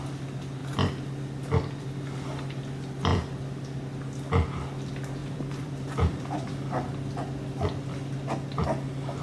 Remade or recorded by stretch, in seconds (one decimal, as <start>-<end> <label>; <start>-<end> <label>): 0.0-5.2 recorded; 5.2-6.5 remade; 6.5-9.2 recorded